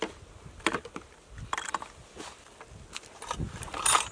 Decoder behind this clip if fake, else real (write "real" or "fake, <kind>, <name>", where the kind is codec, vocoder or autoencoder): real